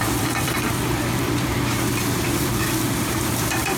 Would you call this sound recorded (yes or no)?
no